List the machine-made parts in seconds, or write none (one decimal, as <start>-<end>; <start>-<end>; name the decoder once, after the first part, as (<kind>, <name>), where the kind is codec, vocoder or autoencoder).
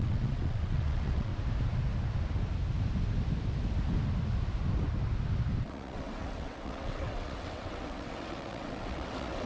0.0-1.3 (vocoder, WaveNeXt); 5.6-9.5